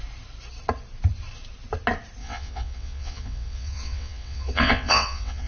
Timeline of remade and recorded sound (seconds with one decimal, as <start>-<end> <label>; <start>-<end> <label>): 0.0-2.2 recorded; 2.2-5.5 remade